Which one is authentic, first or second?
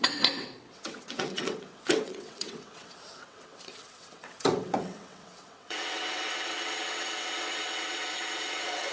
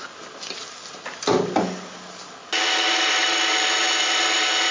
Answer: second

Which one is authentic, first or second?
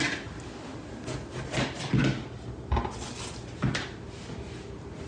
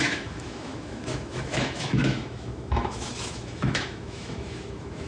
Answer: first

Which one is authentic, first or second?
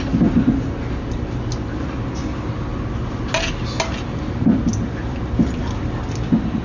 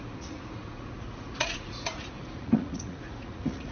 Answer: first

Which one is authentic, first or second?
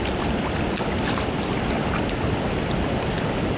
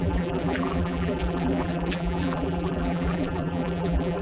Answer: first